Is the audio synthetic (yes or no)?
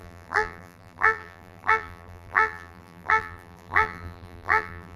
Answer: yes